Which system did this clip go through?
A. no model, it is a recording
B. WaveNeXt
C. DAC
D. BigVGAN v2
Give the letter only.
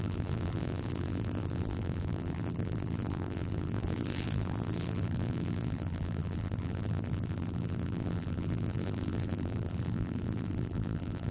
D